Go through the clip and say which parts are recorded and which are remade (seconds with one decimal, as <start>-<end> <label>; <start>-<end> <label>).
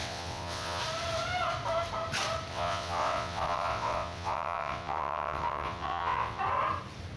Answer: 0.0-0.8 remade; 0.8-2.5 recorded; 2.5-6.4 remade; 6.4-7.2 recorded